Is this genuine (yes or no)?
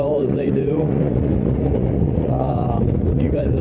no